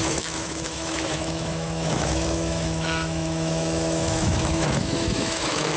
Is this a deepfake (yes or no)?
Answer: yes